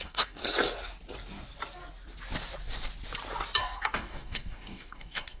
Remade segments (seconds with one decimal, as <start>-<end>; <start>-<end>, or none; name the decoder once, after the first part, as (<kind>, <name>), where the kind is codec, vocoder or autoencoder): 0.0-0.4 (codec, DAC); 3.6-5.4